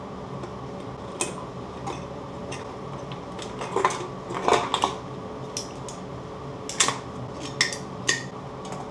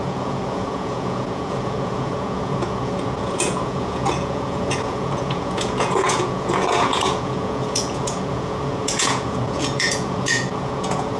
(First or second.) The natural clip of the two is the first